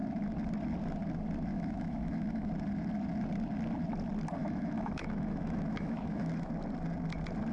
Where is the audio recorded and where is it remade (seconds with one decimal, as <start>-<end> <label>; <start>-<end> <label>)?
0.0-1.5 recorded; 1.5-2.5 remade; 2.5-4.4 recorded; 4.4-6.5 remade; 6.5-7.5 recorded